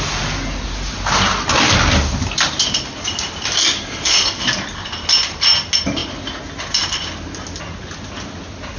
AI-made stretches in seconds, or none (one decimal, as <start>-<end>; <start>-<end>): none